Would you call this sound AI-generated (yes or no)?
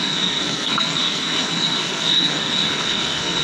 yes